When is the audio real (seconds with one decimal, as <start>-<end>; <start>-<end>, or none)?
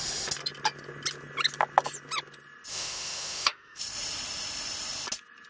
0.0-2.7; 3.8-5.5